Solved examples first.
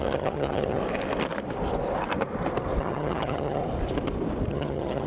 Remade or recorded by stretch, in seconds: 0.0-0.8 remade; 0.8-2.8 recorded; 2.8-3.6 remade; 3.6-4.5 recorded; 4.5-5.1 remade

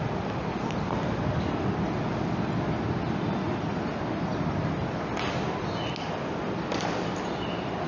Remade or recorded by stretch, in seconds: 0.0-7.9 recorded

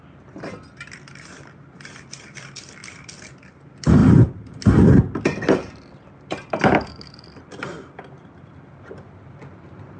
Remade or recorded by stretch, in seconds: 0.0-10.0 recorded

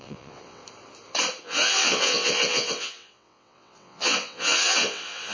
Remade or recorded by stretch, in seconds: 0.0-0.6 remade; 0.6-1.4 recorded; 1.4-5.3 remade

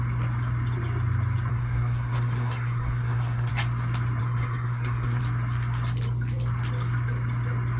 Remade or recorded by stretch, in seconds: 0.0-1.5 recorded; 1.5-3.5 remade; 3.5-4.2 recorded; 4.2-5.2 remade; 5.2-7.8 recorded